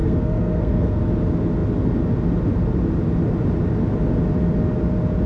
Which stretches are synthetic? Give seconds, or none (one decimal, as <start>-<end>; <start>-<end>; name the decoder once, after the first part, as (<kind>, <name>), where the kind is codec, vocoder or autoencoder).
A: 0.0-1.0 (codec, SNAC)